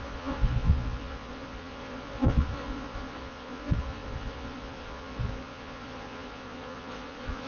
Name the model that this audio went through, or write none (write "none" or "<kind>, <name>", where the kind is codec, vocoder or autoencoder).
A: vocoder, Vocos